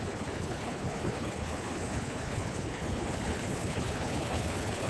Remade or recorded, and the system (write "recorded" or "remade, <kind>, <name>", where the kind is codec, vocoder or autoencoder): remade, codec, HILCodec